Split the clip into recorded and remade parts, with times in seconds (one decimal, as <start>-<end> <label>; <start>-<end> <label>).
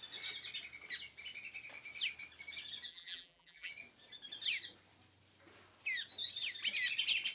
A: 0.0-2.9 recorded; 2.9-3.7 remade; 3.7-7.3 recorded